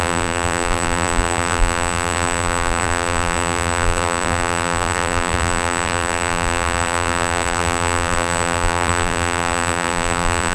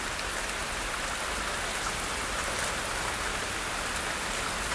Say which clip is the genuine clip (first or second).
second